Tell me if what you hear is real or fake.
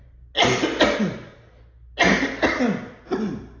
real